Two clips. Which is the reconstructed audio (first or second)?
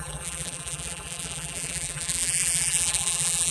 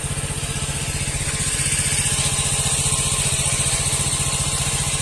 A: first